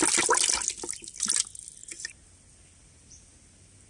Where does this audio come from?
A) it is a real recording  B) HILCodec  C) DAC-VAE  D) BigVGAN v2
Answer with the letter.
A